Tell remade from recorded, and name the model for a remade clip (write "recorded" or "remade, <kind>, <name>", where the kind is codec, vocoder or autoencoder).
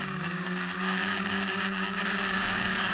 remade, codec, DAC